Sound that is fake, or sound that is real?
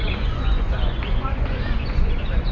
fake